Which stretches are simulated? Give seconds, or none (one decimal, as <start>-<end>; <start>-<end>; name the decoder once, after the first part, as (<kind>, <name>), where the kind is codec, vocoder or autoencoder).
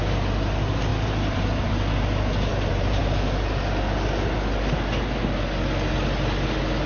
0.9-1.7 (vocoder, BigVGAN v2); 2.5-3.0